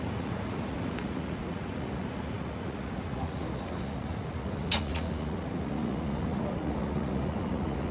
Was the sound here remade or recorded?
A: remade